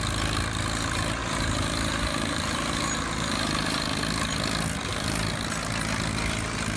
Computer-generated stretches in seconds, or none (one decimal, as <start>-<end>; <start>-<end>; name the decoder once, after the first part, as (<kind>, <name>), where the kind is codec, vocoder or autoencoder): 1.2-4.0 (vocoder, BigVGAN v2); 4.8-5.3